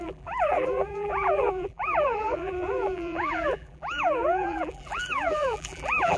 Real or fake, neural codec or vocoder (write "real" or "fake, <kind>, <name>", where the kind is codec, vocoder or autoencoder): fake, vocoder, BigVGAN v2